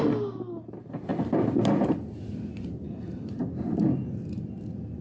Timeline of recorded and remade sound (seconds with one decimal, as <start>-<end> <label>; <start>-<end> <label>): 0.0-5.0 remade